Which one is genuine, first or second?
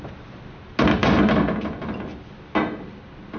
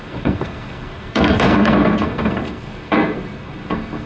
first